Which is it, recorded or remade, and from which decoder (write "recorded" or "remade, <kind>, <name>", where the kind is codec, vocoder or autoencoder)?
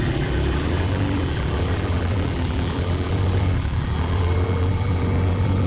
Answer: remade, vocoder, BigVGAN v2